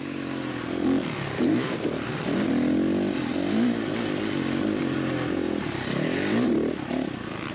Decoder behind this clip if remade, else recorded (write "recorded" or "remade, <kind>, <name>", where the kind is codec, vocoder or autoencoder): recorded